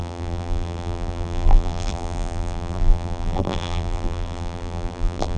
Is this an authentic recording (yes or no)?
no